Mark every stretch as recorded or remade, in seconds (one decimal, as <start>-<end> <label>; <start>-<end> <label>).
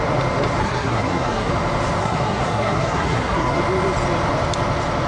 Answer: 0.0-0.6 recorded; 0.6-1.5 remade; 1.5-2.0 recorded; 2.0-3.6 remade; 3.6-5.1 recorded